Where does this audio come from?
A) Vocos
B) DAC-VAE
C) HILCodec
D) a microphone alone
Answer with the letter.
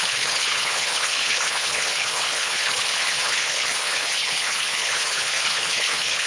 C